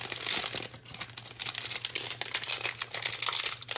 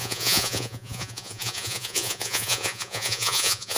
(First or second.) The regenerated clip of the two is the second